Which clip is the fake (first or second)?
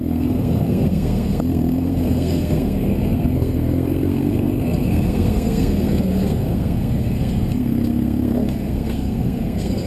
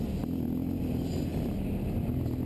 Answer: first